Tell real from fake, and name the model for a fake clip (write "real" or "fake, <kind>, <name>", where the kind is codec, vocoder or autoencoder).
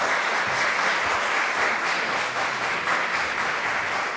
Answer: real